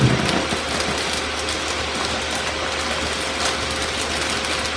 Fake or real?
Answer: real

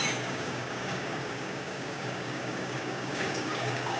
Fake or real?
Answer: fake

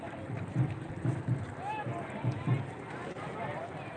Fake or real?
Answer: real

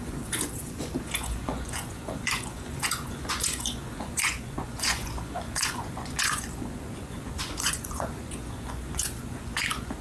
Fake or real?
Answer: fake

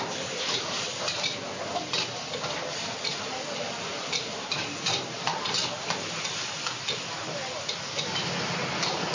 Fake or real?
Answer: real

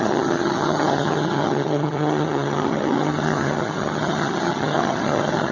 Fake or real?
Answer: fake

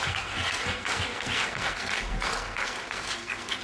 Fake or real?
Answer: fake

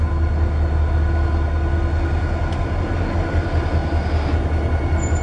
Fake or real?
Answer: real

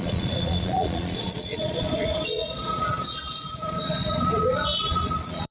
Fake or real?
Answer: fake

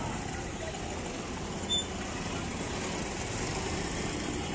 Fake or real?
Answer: real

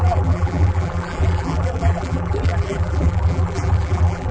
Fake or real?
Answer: fake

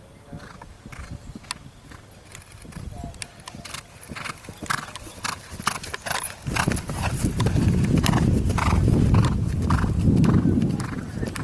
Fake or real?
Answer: real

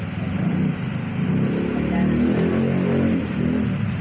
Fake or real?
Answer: real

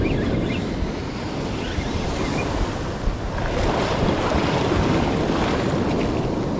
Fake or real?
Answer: real